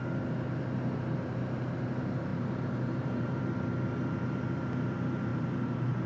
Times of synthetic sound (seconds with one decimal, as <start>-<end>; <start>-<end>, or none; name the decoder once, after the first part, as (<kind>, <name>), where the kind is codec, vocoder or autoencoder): 2.3-3.4 (vocoder, BigVGAN v2); 5.3-6.1